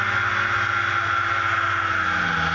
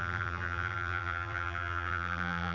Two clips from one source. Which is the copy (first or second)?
second